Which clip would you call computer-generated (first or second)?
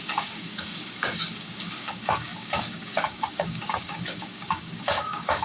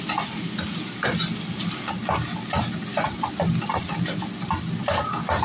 first